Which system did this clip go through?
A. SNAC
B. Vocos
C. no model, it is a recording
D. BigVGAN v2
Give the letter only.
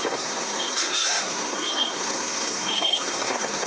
A